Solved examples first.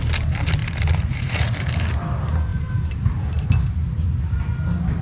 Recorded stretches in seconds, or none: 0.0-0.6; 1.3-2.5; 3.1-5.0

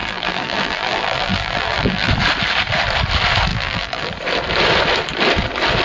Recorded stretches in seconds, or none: 2.1-3.5; 4.1-5.8

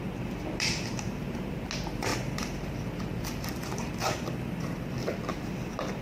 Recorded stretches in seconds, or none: 0.0-6.0

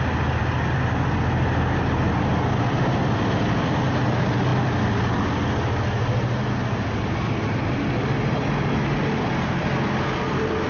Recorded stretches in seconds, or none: 0.0-10.7

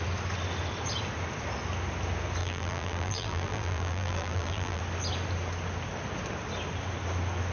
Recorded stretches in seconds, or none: 0.0-2.4; 4.8-7.5

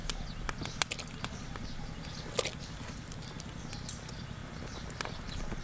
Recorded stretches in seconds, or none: 0.0-4.4

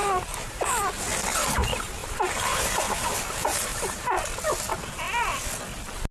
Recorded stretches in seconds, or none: 0.7-1.4; 4.1-6.1

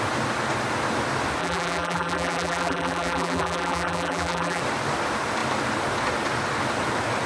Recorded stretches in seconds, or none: 0.0-1.4; 4.6-7.3